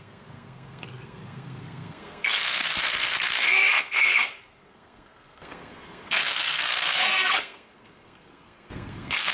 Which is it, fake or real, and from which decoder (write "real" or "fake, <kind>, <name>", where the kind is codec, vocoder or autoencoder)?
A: fake, codec, SNAC